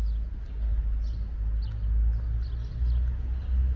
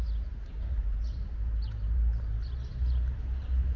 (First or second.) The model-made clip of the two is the second